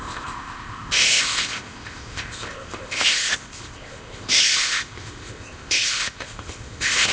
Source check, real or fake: fake